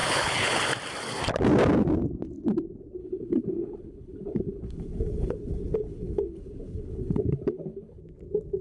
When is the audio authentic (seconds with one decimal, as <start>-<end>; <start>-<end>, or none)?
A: 0.7-3.0; 8.0-8.6